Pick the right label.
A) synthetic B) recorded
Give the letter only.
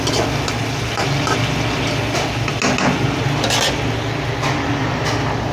B